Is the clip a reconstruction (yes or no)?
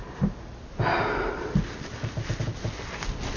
no